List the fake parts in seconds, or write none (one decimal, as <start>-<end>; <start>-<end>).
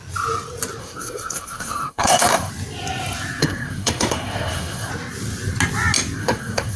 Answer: 0.8-2.5; 3.4-4.9; 6.2-6.8